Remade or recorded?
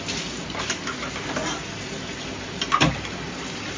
recorded